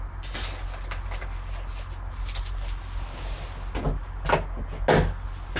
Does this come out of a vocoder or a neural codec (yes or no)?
no